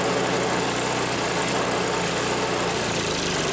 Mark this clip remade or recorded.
recorded